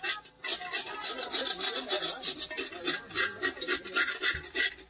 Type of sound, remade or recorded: recorded